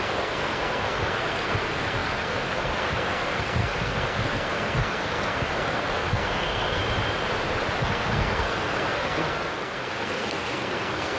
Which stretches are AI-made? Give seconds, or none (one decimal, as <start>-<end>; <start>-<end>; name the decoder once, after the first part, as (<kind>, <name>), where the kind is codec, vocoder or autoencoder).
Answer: 0.0-6.8 (codec, SNAC); 7.8-11.2

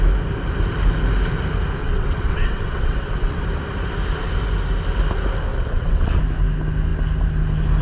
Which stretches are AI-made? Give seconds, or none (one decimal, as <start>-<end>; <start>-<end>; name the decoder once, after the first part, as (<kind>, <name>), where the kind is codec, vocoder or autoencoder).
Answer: 1.8-3.4 (vocoder, WaveNeXt); 5.5-6.2

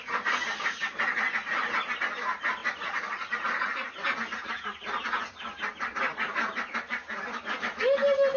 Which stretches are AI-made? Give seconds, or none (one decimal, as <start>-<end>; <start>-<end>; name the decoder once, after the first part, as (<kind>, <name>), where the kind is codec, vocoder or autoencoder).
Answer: none

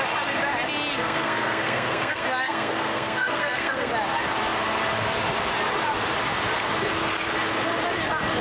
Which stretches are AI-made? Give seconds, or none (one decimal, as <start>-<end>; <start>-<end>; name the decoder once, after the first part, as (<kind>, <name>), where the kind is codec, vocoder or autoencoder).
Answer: 0.9-3.9 (codec, SNAC)